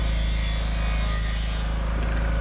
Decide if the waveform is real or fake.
real